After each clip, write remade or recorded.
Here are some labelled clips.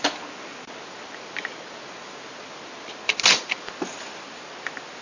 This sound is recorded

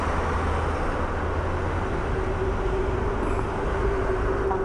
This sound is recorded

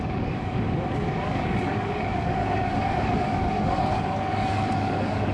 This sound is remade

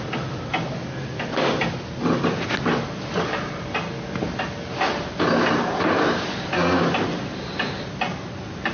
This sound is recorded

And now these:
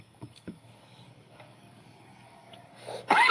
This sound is remade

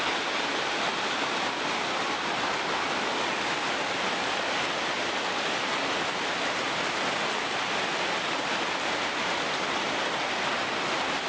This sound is recorded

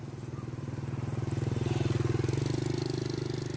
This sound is recorded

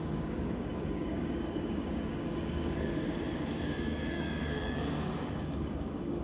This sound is remade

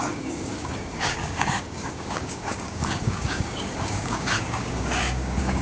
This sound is remade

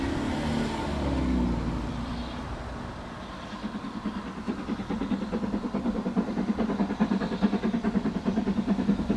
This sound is recorded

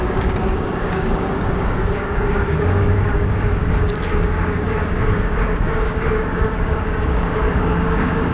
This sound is remade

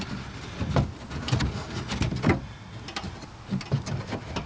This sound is recorded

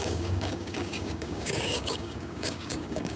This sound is remade